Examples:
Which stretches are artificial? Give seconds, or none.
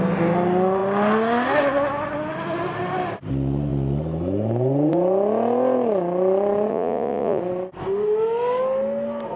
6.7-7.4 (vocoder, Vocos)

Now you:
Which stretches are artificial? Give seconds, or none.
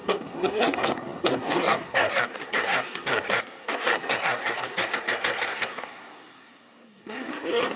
0.0-7.8 (codec, SNAC)